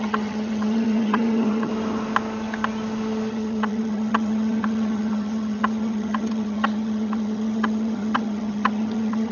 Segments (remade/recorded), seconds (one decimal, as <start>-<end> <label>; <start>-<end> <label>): 0.0-1.7 remade; 1.7-3.3 recorded; 3.3-9.3 remade